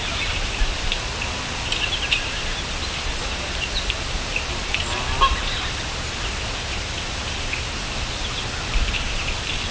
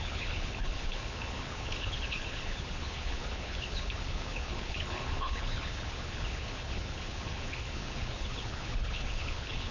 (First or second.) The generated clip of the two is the second